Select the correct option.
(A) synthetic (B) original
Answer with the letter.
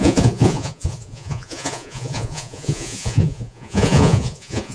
A